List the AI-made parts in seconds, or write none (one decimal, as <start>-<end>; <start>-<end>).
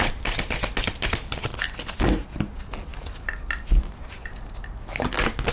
none